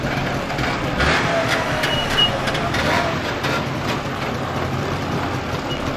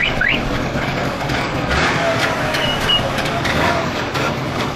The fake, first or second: second